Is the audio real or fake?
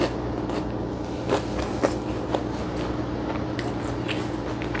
real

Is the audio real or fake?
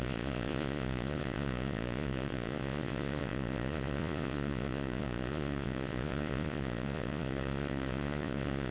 fake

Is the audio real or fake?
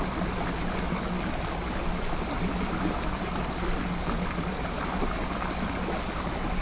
real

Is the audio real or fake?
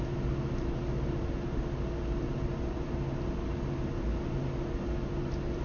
real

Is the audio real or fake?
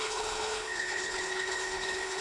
fake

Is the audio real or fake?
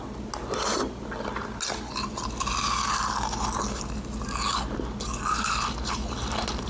real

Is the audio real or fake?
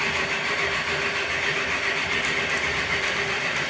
fake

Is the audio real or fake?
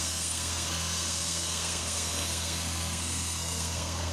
fake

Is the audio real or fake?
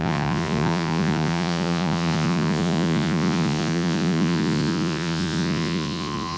fake